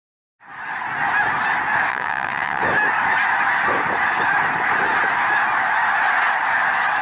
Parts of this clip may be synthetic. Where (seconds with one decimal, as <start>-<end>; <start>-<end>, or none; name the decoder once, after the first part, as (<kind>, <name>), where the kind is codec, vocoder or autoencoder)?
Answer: 1.9-2.6 (vocoder, WaveNeXt)